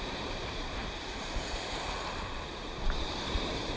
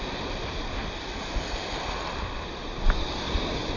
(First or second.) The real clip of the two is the second